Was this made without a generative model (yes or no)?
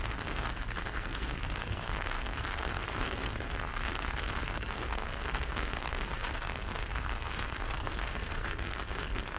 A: no